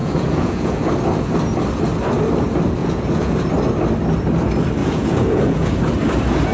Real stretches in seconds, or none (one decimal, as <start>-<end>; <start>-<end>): 0.9-2.8; 3.5-4.8; 5.8-6.5